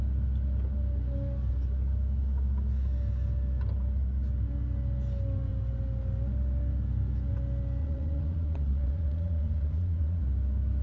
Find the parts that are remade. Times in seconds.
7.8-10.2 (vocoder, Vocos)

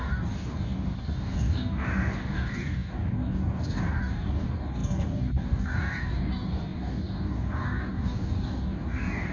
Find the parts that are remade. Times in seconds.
0.0-9.3 (codec, DAC)